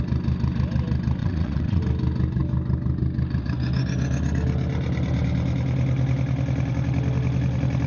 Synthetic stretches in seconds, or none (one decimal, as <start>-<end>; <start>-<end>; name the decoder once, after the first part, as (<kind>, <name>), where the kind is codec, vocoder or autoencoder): 1.2-1.8 (vocoder, WaveNeXt)

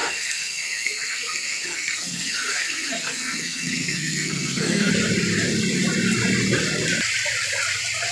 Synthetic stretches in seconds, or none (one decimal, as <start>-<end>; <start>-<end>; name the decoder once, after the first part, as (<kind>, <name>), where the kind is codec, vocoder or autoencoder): 0.0-4.9 (codec, SNAC)

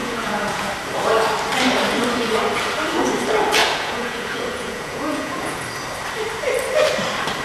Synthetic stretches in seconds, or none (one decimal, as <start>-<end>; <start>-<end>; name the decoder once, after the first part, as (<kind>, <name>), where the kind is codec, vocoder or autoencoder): 0.0-0.7 (vocoder, Vocos); 3.6-5.6

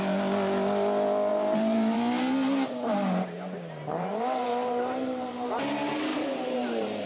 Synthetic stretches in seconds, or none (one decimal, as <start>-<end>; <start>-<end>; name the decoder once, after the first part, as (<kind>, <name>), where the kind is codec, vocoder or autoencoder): 1.3-5.6 (vocoder, BigVGAN v2); 6.1-7.1

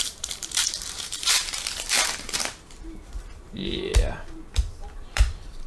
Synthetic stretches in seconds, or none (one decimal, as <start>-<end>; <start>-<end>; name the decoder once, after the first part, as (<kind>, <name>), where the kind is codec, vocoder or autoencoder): 0.0-3.9 (vocoder, BigVGAN v2); 4.8-5.7

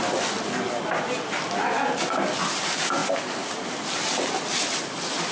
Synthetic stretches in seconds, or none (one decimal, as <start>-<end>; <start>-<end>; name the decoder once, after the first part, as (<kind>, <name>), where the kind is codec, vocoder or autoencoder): none